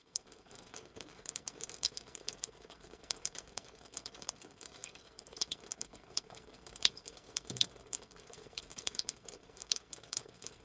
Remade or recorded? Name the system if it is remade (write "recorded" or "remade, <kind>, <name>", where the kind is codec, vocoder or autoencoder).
remade, codec, SNAC